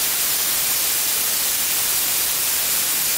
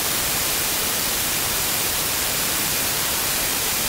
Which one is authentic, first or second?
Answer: first